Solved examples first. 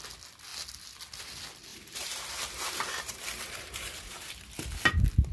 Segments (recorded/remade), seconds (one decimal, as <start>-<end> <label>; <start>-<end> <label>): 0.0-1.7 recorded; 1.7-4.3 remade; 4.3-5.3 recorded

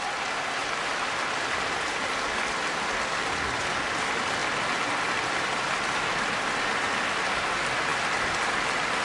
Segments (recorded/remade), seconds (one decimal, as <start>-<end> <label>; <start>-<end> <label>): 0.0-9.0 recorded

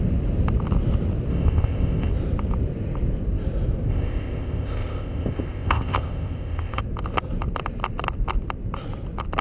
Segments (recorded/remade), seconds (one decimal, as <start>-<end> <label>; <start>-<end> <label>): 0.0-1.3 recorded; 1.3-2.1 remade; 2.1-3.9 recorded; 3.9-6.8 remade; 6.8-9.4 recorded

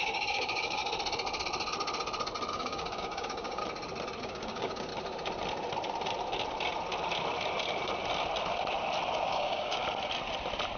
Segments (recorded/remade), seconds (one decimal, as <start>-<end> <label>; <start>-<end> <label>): 0.0-0.8 remade; 0.8-2.5 recorded; 2.5-3.6 remade; 3.6-4.2 recorded; 4.2-4.9 remade; 4.9-9.2 recorded; 9.2-9.8 remade; 9.8-10.8 recorded